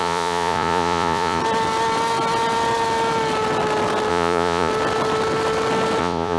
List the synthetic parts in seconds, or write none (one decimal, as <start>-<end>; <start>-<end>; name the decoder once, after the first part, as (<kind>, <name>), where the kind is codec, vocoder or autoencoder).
0.0-1.4 (vocoder, Vocos); 4.1-4.7; 6.0-6.4